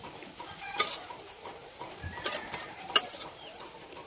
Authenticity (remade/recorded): remade